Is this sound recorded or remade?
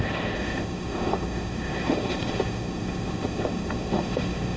remade